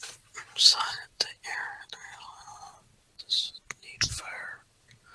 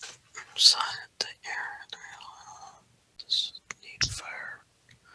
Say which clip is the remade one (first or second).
first